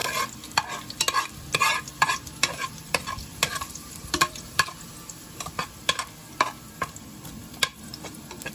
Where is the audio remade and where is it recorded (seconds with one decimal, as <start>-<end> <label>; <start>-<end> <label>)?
0.0-1.9 recorded; 1.9-5.6 remade; 5.6-7.7 recorded; 7.7-8.5 remade